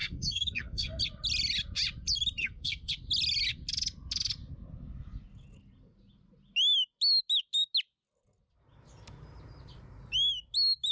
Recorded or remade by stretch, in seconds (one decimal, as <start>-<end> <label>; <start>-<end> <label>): 0.0-1.0 remade; 1.0-2.4 recorded; 2.4-2.9 remade; 2.9-10.9 recorded